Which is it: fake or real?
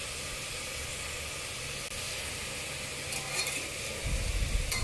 real